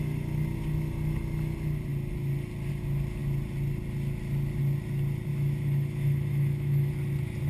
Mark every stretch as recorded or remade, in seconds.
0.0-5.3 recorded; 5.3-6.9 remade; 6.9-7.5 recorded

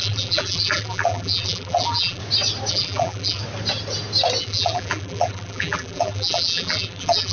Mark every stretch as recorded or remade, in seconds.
0.0-2.2 remade; 2.2-2.7 recorded; 2.7-3.4 remade; 3.4-4.4 recorded; 4.4-7.3 remade

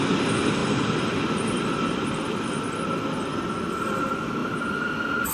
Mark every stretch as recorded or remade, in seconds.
0.0-4.4 recorded; 4.4-5.3 remade